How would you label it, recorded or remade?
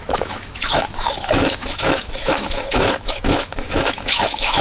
remade